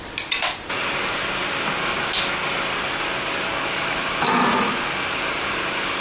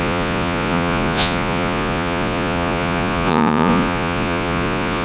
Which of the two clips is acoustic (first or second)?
first